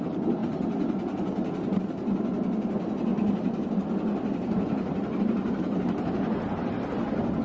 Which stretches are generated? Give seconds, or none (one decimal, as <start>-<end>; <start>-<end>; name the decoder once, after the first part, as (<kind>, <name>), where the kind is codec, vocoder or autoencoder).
none